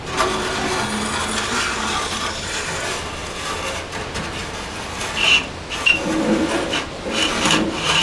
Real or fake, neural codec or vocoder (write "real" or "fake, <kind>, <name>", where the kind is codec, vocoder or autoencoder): real